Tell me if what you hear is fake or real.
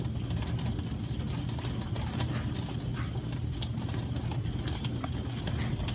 real